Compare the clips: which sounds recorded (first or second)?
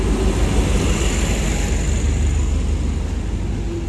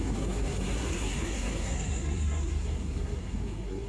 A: first